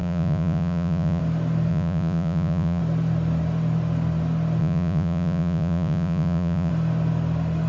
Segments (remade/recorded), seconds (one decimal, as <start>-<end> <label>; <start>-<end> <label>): 0.0-1.2 remade; 1.2-1.7 recorded; 1.7-2.8 remade; 2.8-4.6 recorded; 4.6-6.7 remade; 6.7-7.7 recorded